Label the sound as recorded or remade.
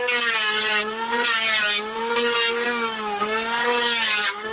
remade